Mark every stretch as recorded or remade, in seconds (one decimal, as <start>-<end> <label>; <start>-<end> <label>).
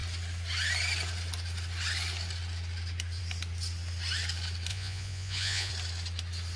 0.0-4.7 recorded; 4.7-5.7 remade; 5.7-6.6 recorded